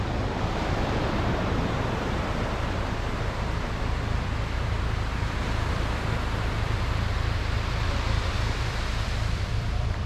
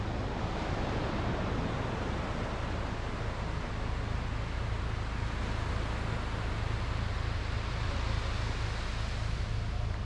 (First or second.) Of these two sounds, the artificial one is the first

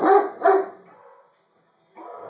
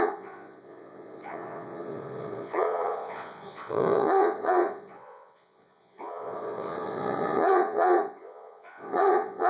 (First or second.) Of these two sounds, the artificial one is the second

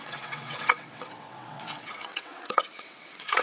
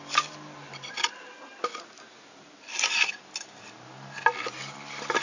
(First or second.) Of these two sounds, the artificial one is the first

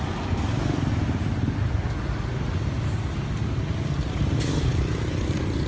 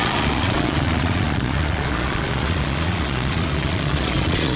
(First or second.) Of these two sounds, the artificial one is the second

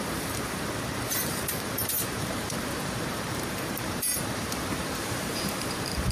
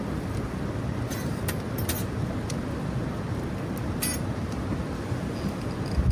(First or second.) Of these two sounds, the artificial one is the first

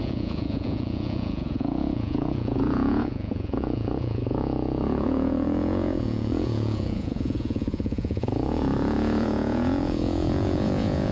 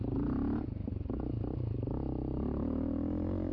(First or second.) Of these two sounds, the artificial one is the first